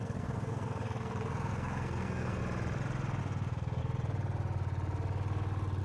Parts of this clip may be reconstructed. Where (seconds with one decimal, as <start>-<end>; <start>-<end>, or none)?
0.0-2.4; 3.2-3.8